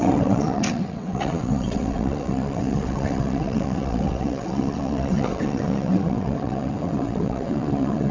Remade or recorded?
remade